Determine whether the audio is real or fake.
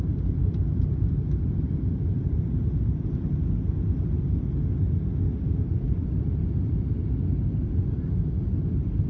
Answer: real